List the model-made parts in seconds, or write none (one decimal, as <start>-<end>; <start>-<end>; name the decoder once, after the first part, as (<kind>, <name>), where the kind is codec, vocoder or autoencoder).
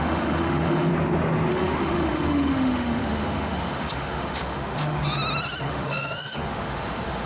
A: 0.0-0.9 (autoencoder, DAC-VAE); 1.5-5.0; 5.6-7.3